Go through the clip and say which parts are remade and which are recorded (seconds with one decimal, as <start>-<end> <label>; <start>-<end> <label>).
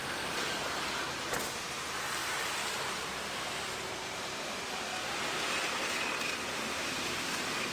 0.0-2.2 recorded; 2.2-4.5 remade; 4.5-7.7 recorded